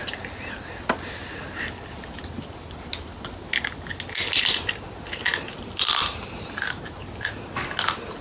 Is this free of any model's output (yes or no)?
yes